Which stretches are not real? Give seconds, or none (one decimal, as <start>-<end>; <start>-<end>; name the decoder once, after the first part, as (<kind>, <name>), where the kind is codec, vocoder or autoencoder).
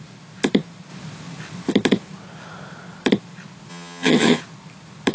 3.7-4.4 (vocoder, HiFi-GAN)